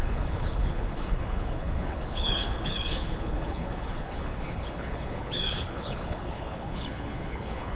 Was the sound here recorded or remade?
remade